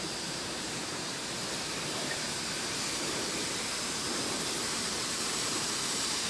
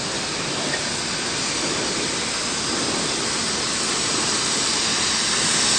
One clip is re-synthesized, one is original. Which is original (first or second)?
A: second